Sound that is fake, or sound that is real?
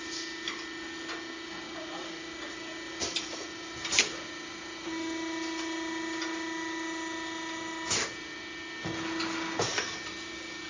real